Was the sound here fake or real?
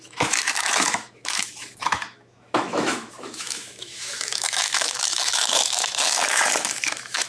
fake